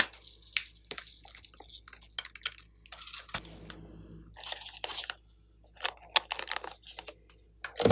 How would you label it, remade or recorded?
recorded